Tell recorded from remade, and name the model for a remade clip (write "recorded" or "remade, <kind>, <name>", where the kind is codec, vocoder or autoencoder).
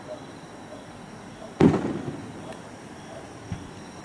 recorded